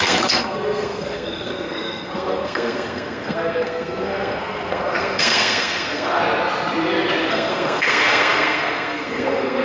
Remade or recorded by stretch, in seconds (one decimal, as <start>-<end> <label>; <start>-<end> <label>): 0.0-6.2 remade; 6.2-7.3 recorded; 7.3-9.6 remade